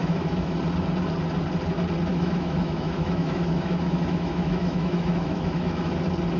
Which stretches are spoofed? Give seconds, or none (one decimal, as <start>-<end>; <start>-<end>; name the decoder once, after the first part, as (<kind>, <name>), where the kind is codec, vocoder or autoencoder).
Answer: 0.0-0.6 (autoencoder, DAC-VAE); 2.1-5.9